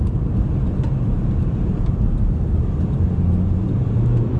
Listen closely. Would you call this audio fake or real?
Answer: fake